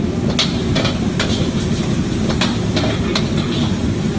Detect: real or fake real